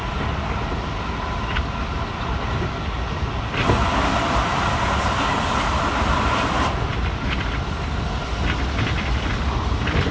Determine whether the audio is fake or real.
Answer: real